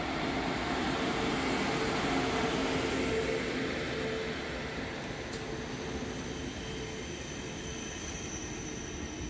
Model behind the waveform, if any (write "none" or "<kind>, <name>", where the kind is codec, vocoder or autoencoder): none